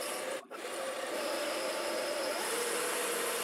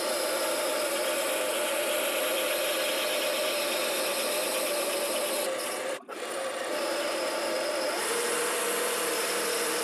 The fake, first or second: first